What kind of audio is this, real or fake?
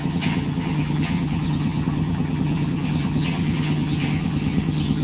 fake